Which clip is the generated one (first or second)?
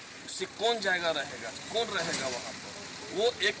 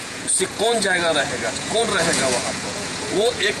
second